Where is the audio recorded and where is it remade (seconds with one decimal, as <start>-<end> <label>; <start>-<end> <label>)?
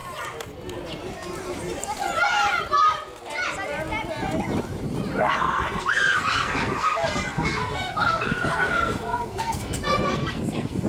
0.0-5.2 recorded; 5.2-10.9 remade